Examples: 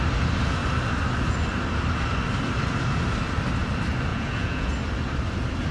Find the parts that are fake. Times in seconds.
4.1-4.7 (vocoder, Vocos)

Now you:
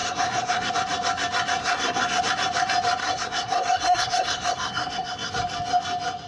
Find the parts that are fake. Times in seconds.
0.0-0.7 (codec, SNAC); 1.6-2.2; 3.0-5.3

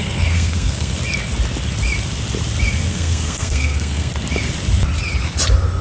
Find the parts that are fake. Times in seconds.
0.0-1.0 (codec, SNAC); 2.9-4.1

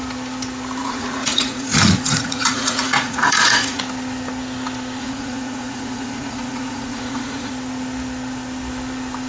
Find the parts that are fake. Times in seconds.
0.8-3.8 (vocoder, Vocos); 5.0-7.5

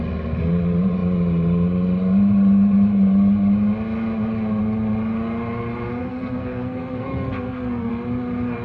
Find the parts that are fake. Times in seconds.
6.0-7.9 (codec, SNAC)

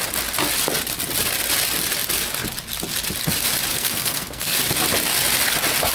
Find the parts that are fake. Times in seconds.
3.7-4.6 (codec, SNAC)

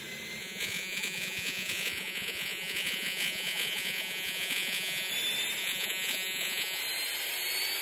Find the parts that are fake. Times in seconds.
0.4-5.1 (vocoder, Vocos); 5.6-6.8